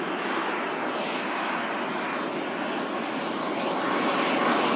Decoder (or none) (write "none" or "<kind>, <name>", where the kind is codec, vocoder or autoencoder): none